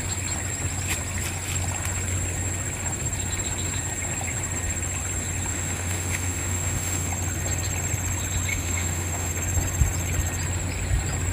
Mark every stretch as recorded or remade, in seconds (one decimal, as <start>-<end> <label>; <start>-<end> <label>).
0.0-5.5 recorded; 5.5-7.1 remade; 7.1-8.5 recorded; 8.5-9.3 remade; 9.3-11.3 recorded